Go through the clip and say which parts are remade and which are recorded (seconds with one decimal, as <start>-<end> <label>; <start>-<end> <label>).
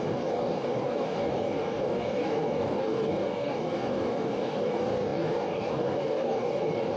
0.0-7.0 remade